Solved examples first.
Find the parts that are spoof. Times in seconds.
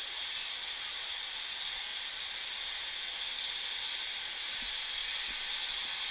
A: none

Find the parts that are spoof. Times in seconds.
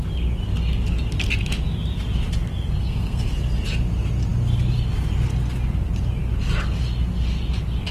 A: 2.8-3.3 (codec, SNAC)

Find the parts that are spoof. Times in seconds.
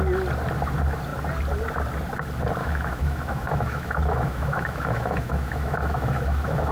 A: 2.6-6.7 (autoencoder, DAC-VAE)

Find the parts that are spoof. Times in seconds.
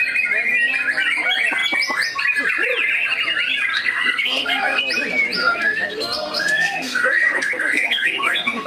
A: 3.7-4.8 (codec, SNAC); 5.4-8.7